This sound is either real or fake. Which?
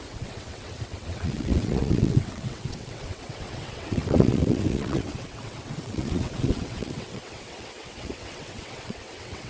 fake